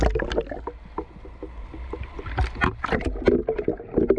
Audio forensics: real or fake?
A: real